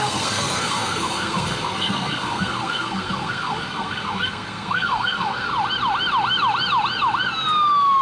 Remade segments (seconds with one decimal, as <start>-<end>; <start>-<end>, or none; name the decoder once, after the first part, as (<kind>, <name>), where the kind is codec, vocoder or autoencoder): 0.0-5.5 (codec, SNAC)